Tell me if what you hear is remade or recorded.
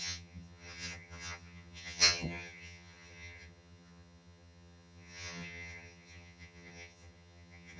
remade